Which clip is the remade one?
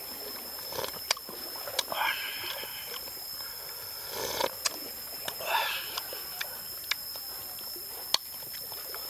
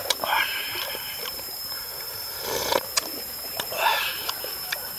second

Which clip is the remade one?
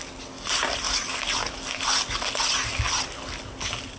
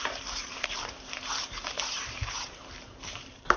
second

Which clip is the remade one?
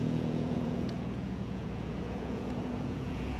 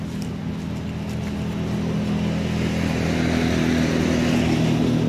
first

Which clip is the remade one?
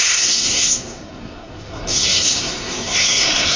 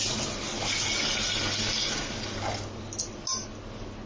first